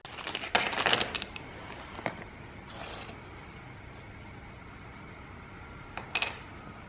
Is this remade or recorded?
recorded